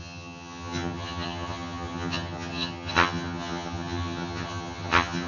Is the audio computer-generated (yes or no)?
yes